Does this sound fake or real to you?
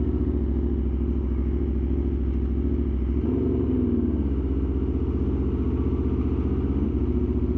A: real